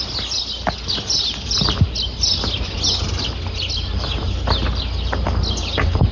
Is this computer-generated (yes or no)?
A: no